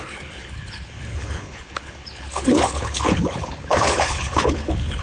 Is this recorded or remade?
remade